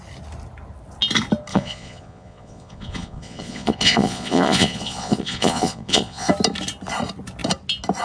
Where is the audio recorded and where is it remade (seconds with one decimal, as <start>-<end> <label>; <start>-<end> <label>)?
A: 0.0-1.5 recorded; 1.5-6.3 remade; 6.3-8.0 recorded